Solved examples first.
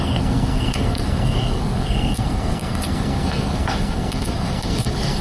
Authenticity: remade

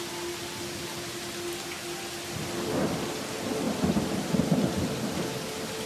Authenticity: recorded